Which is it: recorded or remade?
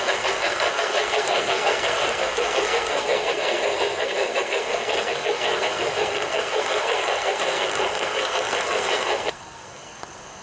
remade